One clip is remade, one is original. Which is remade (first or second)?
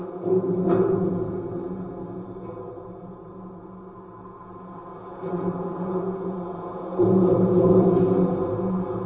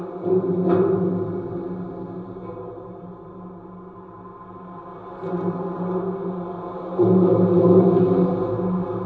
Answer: first